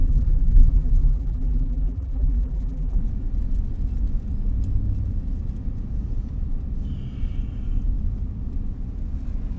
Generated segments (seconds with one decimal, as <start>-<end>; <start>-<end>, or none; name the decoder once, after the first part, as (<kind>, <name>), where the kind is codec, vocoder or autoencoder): 0.0-3.0 (vocoder, BigVGAN v2)